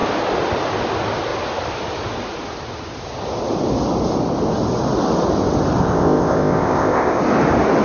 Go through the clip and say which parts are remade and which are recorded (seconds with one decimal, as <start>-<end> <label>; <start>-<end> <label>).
0.0-5.8 recorded; 5.8-7.2 remade; 7.2-7.8 recorded